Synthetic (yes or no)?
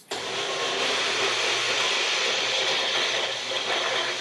no